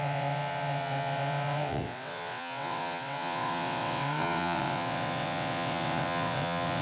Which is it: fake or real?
fake